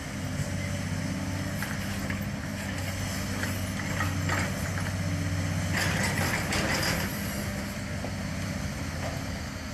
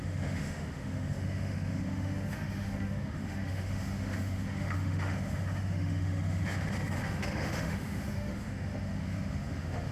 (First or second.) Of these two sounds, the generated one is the second